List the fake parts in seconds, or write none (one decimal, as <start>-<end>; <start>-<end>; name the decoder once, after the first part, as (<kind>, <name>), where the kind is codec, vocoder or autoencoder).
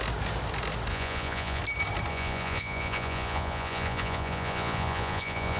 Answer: 0.9-1.6 (vocoder, Vocos); 2.1-5.6